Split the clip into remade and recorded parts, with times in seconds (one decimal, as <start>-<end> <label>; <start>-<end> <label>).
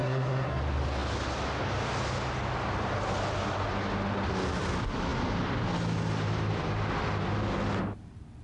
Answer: 0.0-0.6 remade; 0.6-8.4 recorded